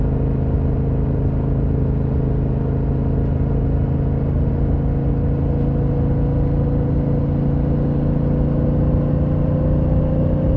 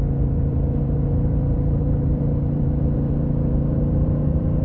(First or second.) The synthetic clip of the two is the second